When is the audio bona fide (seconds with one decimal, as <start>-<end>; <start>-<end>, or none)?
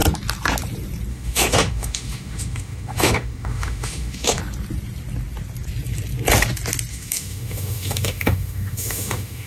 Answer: 0.0-1.1; 4.4-6.9